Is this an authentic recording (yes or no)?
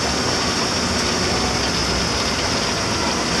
yes